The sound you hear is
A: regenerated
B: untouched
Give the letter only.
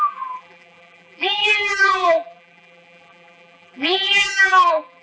A